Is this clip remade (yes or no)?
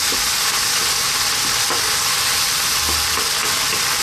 no